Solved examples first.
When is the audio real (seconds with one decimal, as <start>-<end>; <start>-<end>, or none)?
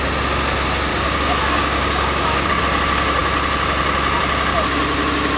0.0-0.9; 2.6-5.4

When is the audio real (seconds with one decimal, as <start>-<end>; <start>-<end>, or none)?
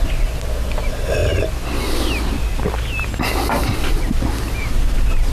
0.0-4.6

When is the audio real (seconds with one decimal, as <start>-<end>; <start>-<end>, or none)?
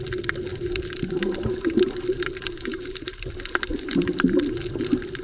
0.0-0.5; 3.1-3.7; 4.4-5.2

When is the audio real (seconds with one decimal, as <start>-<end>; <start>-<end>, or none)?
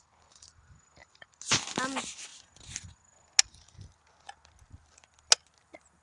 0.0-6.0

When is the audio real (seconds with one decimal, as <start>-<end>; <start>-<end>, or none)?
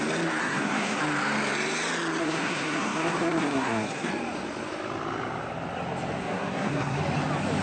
0.0-0.4; 1.0-2.2; 4.1-6.2; 7.0-7.6